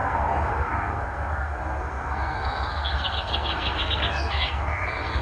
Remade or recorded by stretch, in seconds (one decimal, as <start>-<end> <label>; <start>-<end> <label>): 0.0-5.2 remade